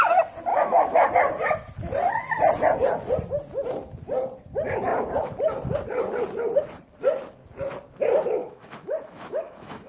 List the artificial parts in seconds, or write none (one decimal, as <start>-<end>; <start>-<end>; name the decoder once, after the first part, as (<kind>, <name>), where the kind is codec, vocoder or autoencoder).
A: 0.5-1.1 (autoencoder, DAC-VAE); 8.4-9.9